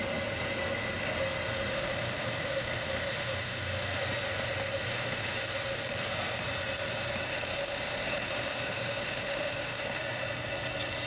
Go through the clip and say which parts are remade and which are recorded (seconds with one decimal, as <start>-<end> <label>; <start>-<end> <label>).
0.0-1.7 recorded; 1.7-4.0 remade; 4.0-4.9 recorded; 4.9-5.4 remade; 5.4-7.3 recorded; 7.3-10.0 remade; 10.0-11.1 recorded